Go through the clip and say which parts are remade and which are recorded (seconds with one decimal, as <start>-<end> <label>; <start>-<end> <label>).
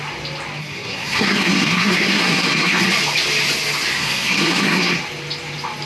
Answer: 0.0-0.6 recorded; 0.6-2.8 remade; 2.8-3.9 recorded; 3.9-5.0 remade; 5.0-5.9 recorded